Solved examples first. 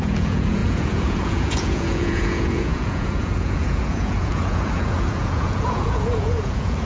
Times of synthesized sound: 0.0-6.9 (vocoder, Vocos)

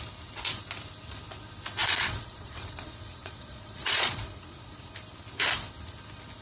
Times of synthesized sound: 1.8-4.9 (vocoder, Vocos)

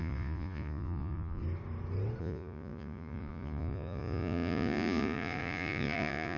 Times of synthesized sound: 0.0-1.4 (vocoder, Vocos); 2.2-6.4

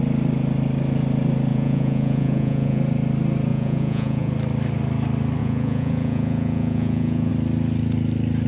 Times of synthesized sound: 1.5-2.8 (vocoder, Vocos); 3.5-4.3; 5.4-7.3

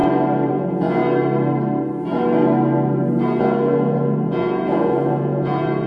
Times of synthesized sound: 0.5-1.0 (vocoder, Vocos); 3.4-5.9